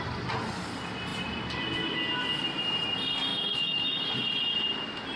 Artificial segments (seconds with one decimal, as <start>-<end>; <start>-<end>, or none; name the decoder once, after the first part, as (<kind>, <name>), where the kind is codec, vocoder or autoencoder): 3.3-4.1 (autoencoder, DAC-VAE)